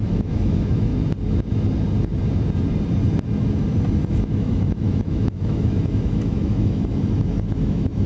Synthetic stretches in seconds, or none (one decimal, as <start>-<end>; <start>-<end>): 0.0-0.9; 4.1-8.1